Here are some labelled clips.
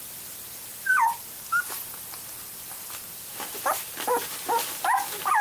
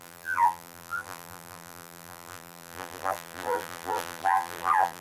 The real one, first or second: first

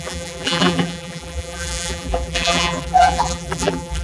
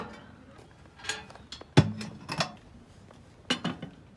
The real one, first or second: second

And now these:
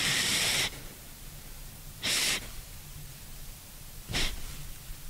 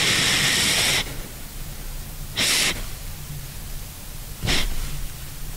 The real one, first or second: second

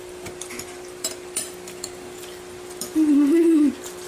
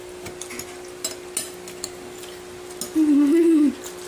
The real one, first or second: second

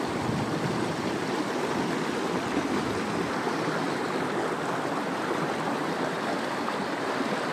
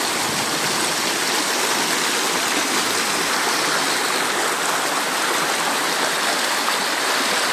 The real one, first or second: second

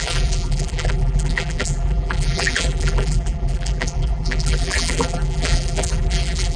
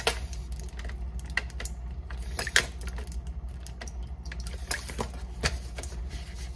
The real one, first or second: second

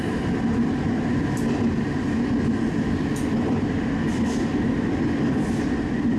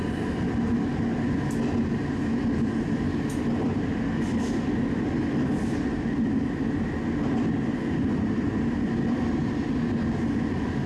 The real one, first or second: second